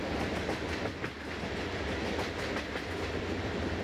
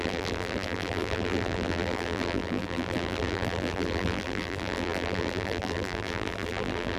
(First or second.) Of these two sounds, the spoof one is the second